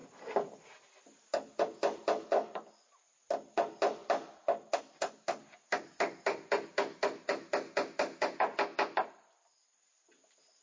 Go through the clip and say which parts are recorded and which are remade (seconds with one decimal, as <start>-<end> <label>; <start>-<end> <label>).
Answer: 0.0-10.6 recorded